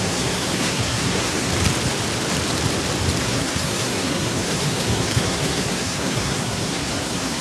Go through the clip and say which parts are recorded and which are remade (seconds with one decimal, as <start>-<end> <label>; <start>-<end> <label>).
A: 0.0-1.5 remade; 1.5-3.2 recorded; 3.2-7.4 remade